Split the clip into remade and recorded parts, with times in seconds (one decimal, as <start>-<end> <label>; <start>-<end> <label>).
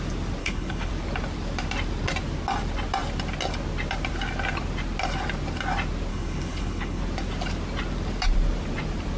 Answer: 0.0-0.4 recorded; 0.4-0.9 remade; 0.9-6.1 recorded; 6.1-7.0 remade; 7.0-9.2 recorded